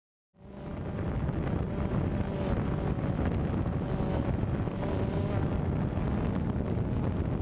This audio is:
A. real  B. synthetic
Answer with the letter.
A